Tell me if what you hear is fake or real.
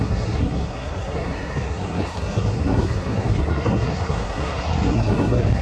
fake